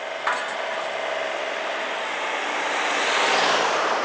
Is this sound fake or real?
real